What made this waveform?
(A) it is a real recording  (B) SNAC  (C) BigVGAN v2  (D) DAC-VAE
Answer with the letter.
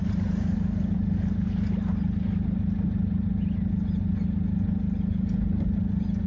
A